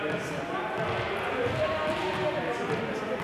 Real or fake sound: real